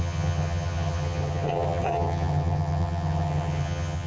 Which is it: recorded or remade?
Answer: remade